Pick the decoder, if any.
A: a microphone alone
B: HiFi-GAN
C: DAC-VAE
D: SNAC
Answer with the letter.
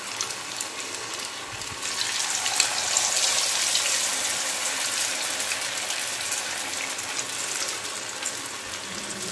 A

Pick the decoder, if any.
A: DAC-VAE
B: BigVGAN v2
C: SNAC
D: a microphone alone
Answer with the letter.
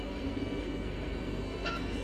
C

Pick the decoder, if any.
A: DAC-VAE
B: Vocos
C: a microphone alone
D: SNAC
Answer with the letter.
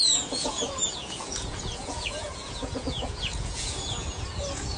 B